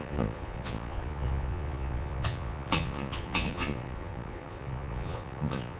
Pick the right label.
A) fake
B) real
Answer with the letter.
A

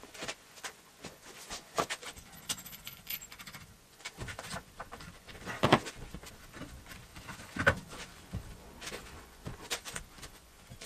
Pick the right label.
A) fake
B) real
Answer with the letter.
A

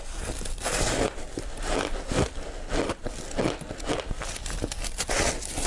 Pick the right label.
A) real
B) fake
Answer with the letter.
A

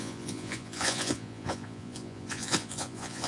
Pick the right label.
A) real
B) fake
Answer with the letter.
B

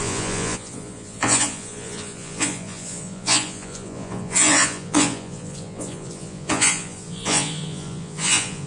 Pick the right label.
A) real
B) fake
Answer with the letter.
B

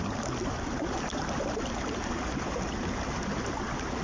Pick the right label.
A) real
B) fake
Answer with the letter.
A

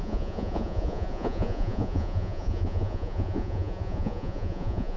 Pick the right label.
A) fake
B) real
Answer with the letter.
A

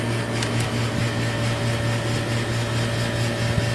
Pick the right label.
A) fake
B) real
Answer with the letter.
B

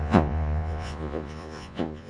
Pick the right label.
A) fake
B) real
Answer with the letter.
A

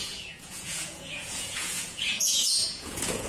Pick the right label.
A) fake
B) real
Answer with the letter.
A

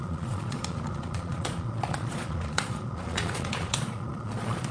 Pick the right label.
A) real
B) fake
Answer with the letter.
B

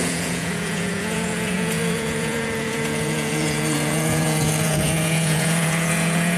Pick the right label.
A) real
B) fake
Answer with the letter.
B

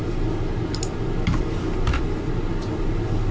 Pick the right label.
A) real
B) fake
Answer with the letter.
A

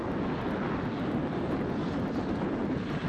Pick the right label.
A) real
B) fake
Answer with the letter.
A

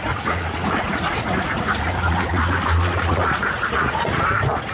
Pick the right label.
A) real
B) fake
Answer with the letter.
B